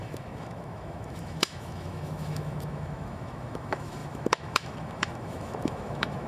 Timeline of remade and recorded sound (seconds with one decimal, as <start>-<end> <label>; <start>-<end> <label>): 0.0-6.3 remade